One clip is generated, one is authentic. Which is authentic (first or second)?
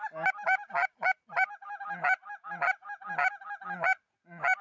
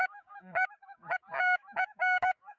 first